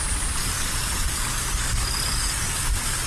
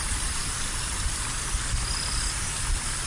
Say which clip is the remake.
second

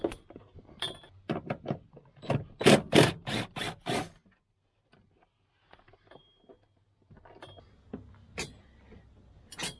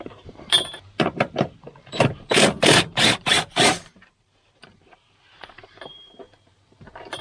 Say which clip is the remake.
second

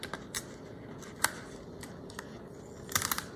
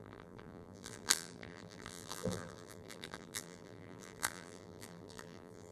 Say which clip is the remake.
second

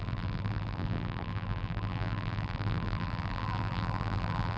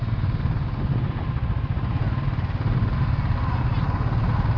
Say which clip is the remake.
first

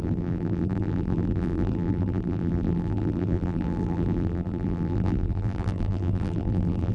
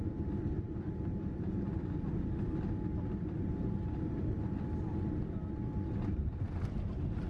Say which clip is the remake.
first